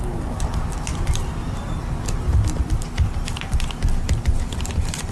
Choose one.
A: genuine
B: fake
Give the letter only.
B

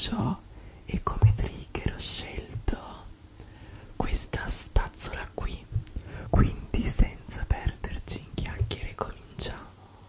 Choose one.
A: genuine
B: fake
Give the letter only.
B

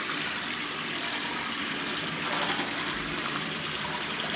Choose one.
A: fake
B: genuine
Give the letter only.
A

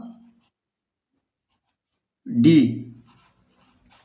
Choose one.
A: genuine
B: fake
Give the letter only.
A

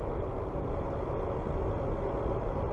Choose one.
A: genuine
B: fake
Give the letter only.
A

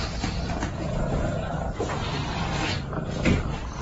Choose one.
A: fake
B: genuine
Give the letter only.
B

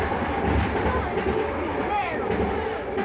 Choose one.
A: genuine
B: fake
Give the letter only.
A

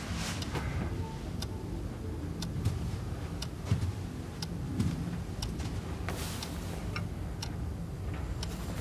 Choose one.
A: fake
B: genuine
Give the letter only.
B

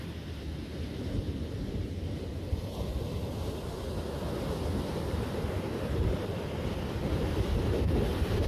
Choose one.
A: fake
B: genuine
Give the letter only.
A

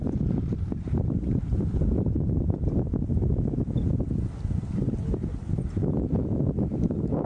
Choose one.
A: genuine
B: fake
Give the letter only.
A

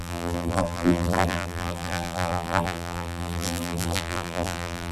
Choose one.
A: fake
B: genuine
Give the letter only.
A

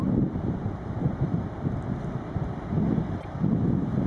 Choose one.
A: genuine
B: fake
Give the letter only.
B